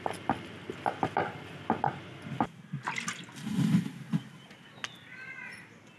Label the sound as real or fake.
real